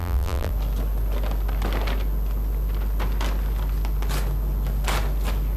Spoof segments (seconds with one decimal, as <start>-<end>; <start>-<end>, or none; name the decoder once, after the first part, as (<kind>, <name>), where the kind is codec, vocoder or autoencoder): 0.0-0.5 (vocoder, BigVGAN v2)